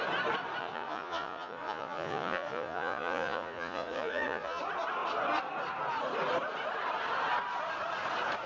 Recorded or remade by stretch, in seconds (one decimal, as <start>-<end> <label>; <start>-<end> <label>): 0.0-0.6 recorded; 0.6-4.6 remade; 4.6-8.5 recorded